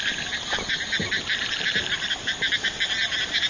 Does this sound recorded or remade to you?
recorded